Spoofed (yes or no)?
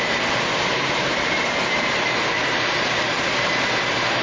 yes